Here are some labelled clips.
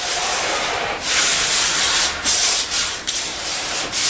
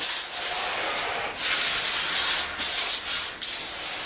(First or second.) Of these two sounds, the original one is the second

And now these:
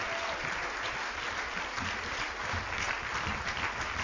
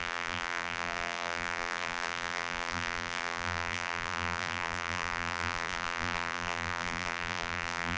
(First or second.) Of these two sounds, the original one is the first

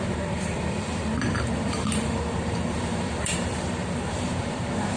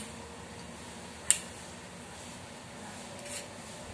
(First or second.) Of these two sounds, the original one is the second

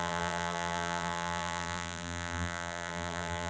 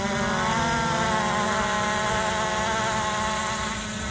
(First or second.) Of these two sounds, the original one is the second